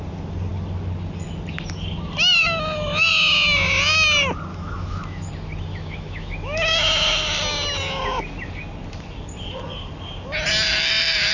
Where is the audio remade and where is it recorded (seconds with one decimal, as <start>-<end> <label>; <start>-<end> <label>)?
0.0-4.5 recorded; 4.5-5.3 remade; 5.3-5.7 recorded; 5.7-7.3 remade; 7.3-11.3 recorded